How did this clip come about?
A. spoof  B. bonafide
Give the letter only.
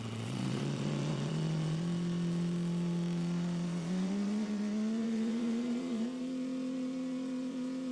A